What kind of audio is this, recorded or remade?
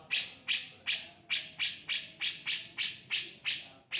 recorded